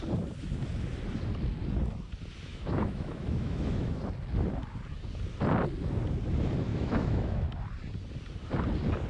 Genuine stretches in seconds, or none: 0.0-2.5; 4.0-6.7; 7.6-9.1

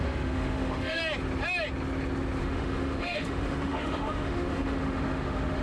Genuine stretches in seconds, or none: 1.0-2.4

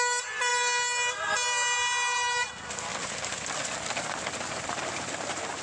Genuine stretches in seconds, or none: 0.0-5.6

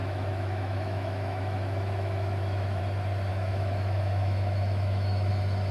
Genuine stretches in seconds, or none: 2.8-3.3; 5.3-5.7

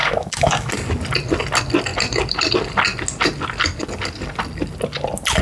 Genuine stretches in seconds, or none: 0.7-5.4

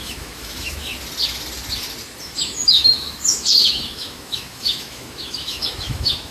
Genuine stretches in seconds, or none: 0.9-2.2